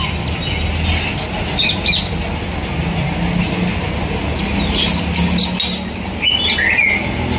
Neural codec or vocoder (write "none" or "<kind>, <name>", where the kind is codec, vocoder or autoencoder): none